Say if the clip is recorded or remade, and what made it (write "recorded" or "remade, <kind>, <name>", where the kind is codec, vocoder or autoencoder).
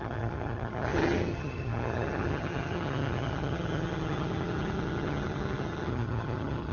remade, vocoder, HiFi-GAN